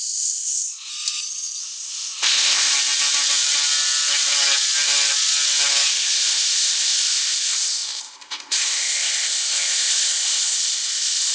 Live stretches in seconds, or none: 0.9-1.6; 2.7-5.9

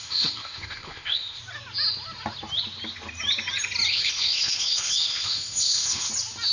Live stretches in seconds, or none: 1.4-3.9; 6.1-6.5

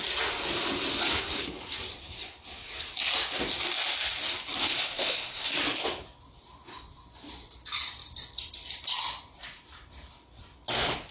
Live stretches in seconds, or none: 0.0-4.6; 5.5-11.1